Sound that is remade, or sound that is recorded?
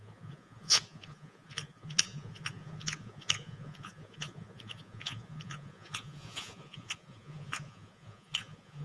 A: remade